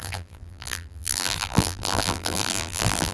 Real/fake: fake